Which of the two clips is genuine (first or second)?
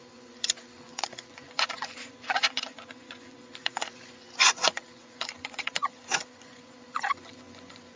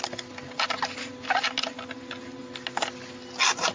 second